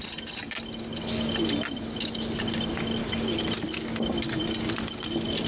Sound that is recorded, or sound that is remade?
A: recorded